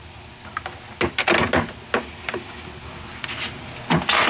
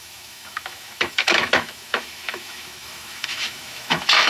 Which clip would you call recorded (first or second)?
first